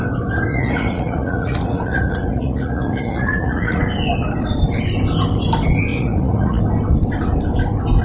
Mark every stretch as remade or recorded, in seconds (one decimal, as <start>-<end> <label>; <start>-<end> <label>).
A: 0.0-0.5 recorded; 0.5-3.8 remade; 3.8-5.9 recorded; 5.9-6.6 remade; 6.6-8.0 recorded